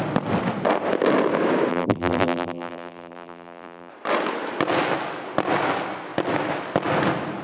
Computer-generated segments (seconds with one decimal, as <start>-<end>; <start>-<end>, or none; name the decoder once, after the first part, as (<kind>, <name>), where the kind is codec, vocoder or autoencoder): 1.7-3.9 (vocoder, BigVGAN v2)